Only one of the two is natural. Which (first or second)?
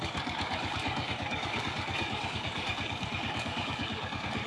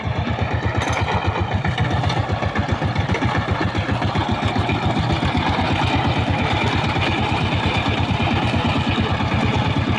second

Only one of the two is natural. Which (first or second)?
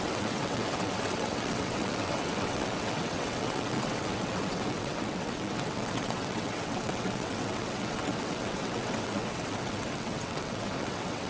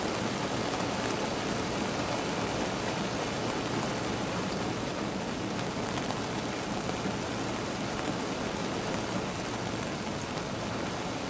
second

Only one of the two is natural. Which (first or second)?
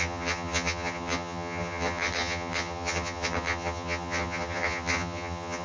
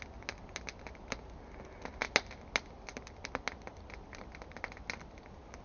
second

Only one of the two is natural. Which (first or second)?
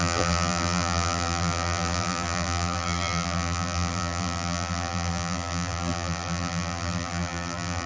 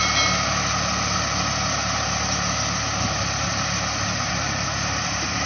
second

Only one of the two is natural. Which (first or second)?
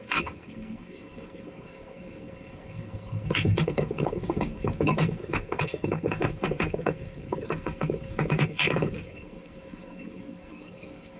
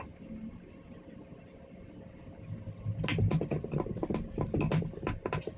second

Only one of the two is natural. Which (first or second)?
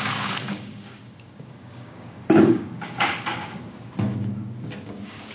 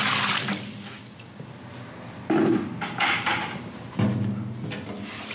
second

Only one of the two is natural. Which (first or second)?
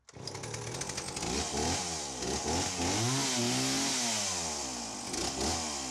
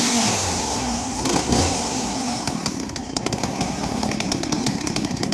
first